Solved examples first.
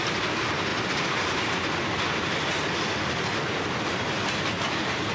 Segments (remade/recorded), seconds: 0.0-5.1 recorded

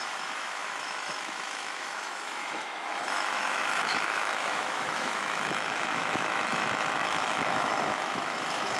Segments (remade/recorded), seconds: 0.0-8.8 remade

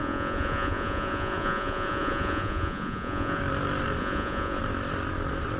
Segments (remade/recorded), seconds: 0.0-3.4 remade; 3.4-4.0 recorded; 4.0-4.6 remade; 4.6-5.6 recorded

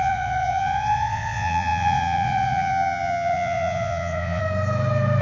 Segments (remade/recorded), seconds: 0.0-4.4 remade; 4.4-5.2 recorded

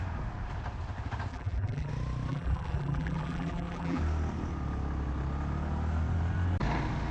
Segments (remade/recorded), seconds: 0.0-1.3 recorded; 1.3-1.9 remade; 1.9-2.3 recorded; 2.3-4.0 remade; 4.0-7.1 recorded

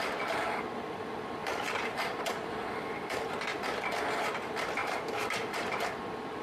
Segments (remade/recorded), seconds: 0.0-1.4 recorded; 1.4-2.2 remade; 2.2-4.8 recorded; 4.8-5.7 remade; 5.7-6.4 recorded

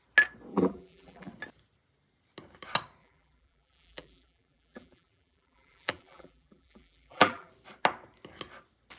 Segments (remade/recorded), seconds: 0.0-0.5 recorded; 0.5-1.3 remade; 1.3-3.0 recorded; 3.0-7.5 remade; 7.5-9.0 recorded